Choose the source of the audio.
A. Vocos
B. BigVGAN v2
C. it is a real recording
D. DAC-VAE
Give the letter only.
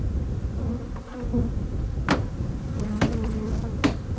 C